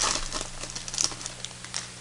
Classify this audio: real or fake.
real